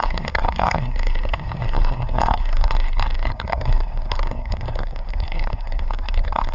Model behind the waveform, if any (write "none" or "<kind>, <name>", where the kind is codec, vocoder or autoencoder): codec, SNAC